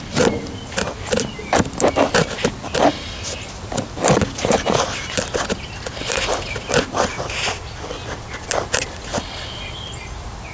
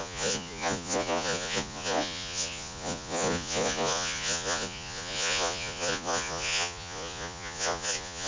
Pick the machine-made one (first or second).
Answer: second